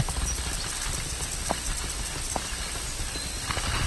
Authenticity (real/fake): real